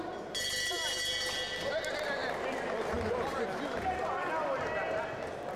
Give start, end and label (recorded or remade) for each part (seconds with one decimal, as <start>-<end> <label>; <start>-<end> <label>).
0.0-5.6 recorded